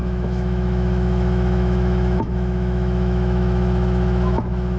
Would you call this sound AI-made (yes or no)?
yes